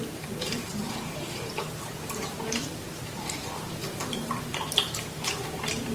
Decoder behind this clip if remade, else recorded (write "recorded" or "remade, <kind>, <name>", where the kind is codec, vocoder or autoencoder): remade, vocoder, BigVGAN v2